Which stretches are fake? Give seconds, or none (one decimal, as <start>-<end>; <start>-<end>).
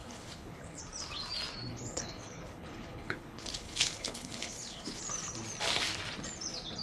0.0-0.8; 1.7-5.0